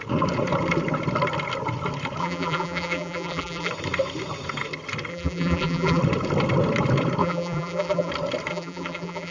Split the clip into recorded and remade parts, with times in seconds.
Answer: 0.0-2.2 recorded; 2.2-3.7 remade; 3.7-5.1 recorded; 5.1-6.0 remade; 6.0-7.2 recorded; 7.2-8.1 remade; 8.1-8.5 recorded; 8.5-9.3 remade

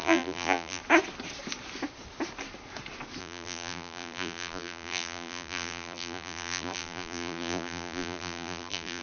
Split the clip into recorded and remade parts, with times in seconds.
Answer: 0.0-0.8 remade; 0.8-3.2 recorded; 3.2-9.0 remade

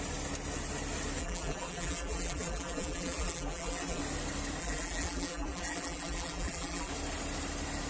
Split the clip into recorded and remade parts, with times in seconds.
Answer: 0.0-1.2 recorded; 1.2-4.0 remade; 4.0-4.6 recorded; 4.6-6.9 remade; 6.9-7.9 recorded

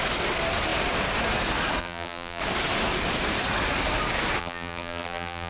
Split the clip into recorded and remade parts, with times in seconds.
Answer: 0.0-1.8 recorded; 1.8-2.4 remade; 2.4-4.4 recorded; 4.4-5.5 remade

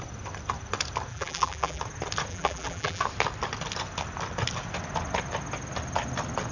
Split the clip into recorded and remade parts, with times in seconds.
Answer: 0.0-1.1 recorded; 1.1-1.8 remade; 1.8-2.3 recorded; 2.3-3.0 remade; 3.0-6.5 recorded